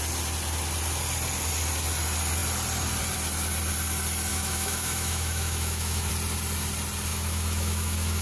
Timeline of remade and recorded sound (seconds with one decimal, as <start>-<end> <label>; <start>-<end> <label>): 0.0-4.3 recorded; 4.3-6.1 remade; 6.1-7.1 recorded; 7.1-8.2 remade